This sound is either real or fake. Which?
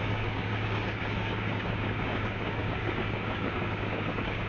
fake